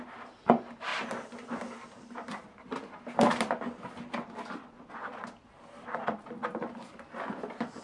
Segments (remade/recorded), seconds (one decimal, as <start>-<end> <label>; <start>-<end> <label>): 0.0-0.9 recorded; 0.9-2.4 remade; 2.4-7.8 recorded